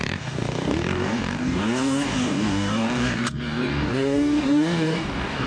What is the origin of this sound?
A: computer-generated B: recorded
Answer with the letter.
A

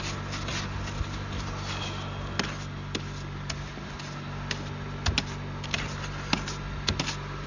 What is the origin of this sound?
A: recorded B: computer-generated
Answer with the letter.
A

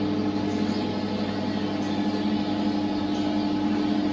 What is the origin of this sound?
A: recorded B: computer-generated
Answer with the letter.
A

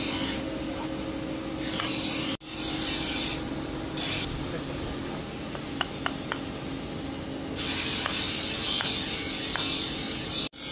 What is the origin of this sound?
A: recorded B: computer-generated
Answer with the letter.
A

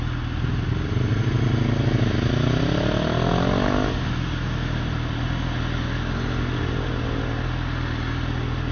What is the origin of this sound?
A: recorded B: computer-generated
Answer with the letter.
A